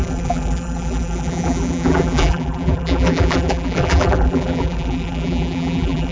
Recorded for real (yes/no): no